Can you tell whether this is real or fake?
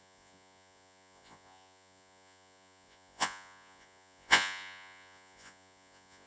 fake